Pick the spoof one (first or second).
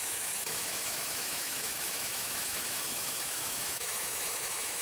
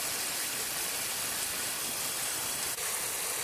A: first